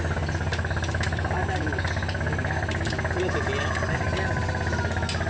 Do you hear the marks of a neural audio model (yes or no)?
no